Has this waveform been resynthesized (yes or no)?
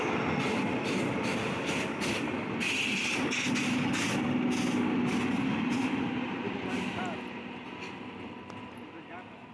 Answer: no